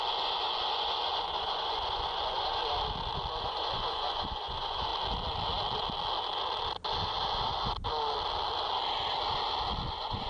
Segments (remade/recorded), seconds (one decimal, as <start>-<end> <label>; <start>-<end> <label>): 0.0-2.6 remade; 2.6-3.4 recorded; 3.4-4.9 remade; 4.9-9.9 recorded; 9.9-10.3 remade